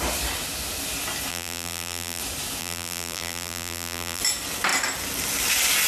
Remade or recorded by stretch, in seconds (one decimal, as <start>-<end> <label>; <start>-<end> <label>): 0.0-1.3 recorded; 1.3-2.2 remade; 2.2-2.6 recorded; 2.6-4.2 remade; 4.2-5.9 recorded